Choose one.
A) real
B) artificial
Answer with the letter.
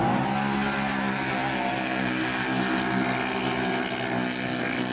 A